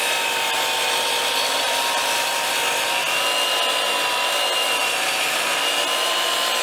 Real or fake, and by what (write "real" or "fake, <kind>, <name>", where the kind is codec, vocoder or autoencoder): real